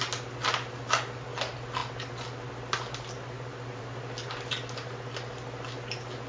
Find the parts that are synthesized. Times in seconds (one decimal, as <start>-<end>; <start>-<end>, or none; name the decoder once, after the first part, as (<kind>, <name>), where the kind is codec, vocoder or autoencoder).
none